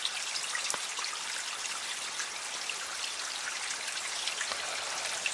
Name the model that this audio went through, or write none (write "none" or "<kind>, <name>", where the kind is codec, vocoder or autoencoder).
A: none